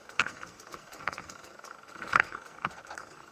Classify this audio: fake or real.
fake